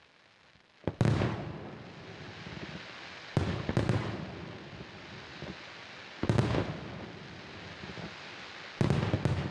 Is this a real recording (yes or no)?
yes